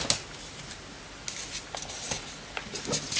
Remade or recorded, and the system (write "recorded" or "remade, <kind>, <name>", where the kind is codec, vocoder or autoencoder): recorded